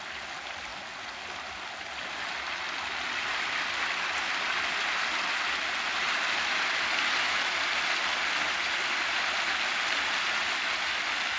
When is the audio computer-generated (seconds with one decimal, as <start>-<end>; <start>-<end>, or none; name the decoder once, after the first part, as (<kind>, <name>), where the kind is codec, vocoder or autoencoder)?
none